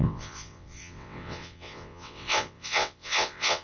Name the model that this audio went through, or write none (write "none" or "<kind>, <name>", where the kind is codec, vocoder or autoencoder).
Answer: vocoder, WaveNeXt